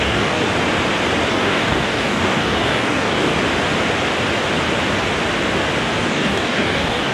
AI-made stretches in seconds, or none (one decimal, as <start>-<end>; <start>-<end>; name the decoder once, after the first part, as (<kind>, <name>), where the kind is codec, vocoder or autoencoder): 0.0-0.4 (codec, DAC); 1.3-3.3; 6.0-7.1